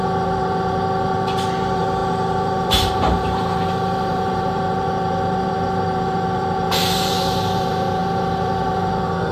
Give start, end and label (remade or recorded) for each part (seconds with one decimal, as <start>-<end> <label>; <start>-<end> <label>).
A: 0.0-9.3 remade